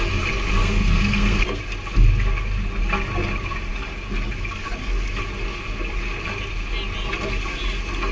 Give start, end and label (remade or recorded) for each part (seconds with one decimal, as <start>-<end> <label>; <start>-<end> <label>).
0.0-0.6 recorded; 0.6-1.6 remade; 1.6-8.1 recorded